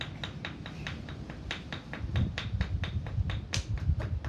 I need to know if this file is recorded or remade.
recorded